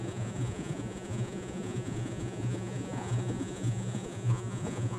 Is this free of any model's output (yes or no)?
no